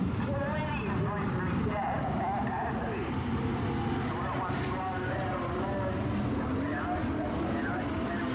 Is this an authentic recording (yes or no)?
yes